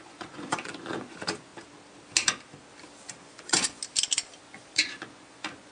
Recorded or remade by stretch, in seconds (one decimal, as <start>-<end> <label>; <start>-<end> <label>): 0.0-1.5 remade; 1.5-3.2 recorded; 3.2-3.8 remade; 3.8-4.4 recorded; 4.4-5.7 remade